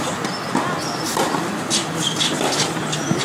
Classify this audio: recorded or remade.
recorded